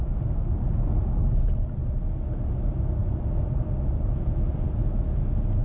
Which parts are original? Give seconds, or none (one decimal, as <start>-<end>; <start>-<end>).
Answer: 0.0-5.6